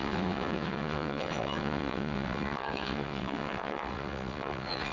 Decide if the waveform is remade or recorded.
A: remade